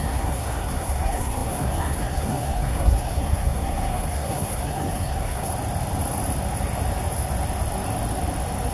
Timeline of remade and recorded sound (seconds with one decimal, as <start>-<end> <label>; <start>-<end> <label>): 0.0-5.5 remade; 5.5-8.7 recorded